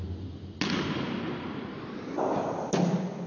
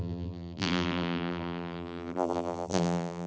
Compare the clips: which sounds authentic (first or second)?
first